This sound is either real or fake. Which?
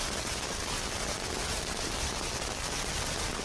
real